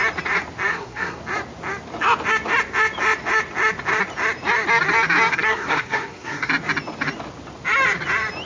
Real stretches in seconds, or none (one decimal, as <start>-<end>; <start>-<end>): 0.0-0.7; 1.2-5.3; 6.5-8.5